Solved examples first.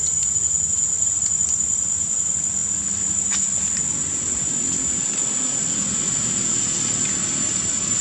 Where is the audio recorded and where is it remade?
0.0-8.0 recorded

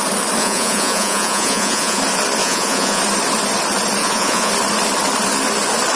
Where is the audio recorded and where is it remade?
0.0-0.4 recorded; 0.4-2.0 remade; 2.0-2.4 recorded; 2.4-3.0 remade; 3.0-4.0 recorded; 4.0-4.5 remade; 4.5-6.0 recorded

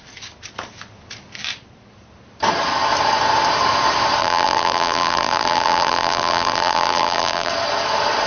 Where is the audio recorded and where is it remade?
0.0-4.2 recorded; 4.2-7.5 remade; 7.5-8.3 recorded

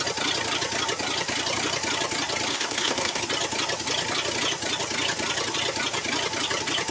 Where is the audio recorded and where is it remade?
0.0-2.5 recorded; 2.5-3.2 remade; 3.2-6.9 recorded

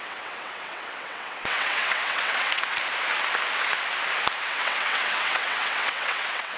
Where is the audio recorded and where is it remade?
0.0-2.7 remade; 2.7-4.5 recorded; 4.5-6.6 remade

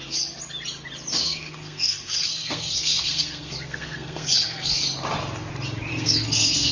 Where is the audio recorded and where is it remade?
0.0-1.1 recorded; 1.1-4.8 remade; 4.8-5.9 recorded; 5.9-6.7 remade

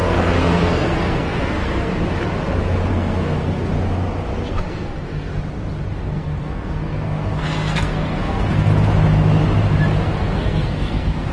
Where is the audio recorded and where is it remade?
0.0-1.9 remade; 1.9-2.9 recorded; 2.9-3.7 remade; 3.7-4.5 recorded; 4.5-5.3 remade; 5.3-6.0 recorded; 6.0-8.7 remade; 8.7-10.0 recorded; 10.0-11.3 remade